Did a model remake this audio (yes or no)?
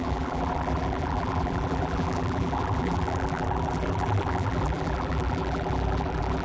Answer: yes